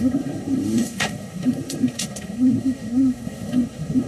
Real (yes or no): no